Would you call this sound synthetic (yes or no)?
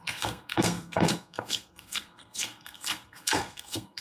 yes